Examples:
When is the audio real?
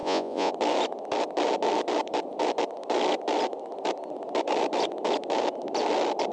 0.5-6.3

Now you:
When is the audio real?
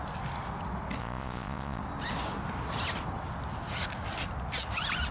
0.0-1.0; 1.8-5.1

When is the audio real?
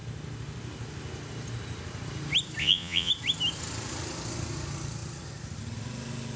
0.0-2.6; 3.1-6.4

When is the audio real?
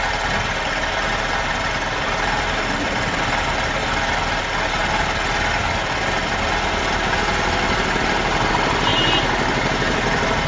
0.0-10.5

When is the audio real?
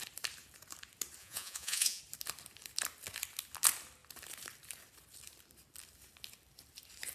0.0-1.2; 2.0-7.1